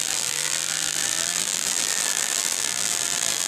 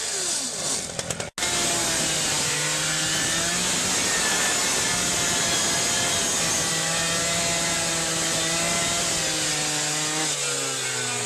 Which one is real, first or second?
second